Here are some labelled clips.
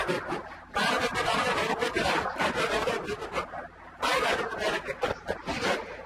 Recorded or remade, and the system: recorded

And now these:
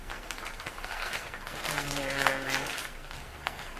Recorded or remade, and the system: remade, codec, SNAC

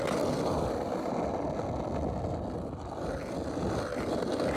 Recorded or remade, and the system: recorded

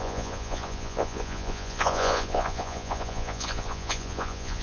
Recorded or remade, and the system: remade, vocoder, Vocos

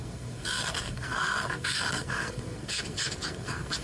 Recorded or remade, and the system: remade, codec, SNAC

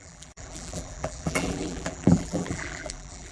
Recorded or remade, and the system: remade, vocoder, BigVGAN v2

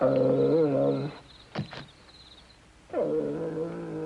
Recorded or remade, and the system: recorded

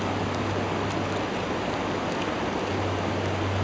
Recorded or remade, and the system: recorded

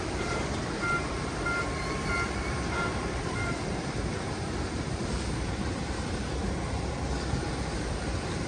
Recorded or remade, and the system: remade, vocoder, BigVGAN v2